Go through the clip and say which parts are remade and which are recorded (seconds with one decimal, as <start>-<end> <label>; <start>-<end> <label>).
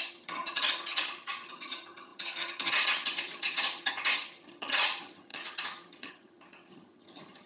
0.0-7.5 remade